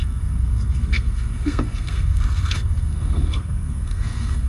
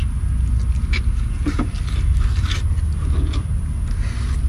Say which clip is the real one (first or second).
second